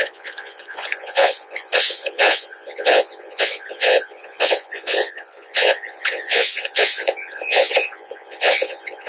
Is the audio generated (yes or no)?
yes